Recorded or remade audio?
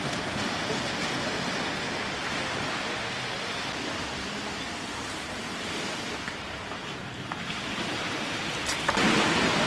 recorded